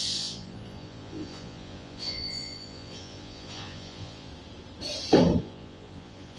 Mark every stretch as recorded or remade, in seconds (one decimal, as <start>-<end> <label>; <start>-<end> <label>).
0.0-4.3 remade; 4.3-5.4 recorded; 5.4-6.4 remade